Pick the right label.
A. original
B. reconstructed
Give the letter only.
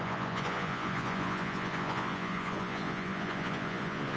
B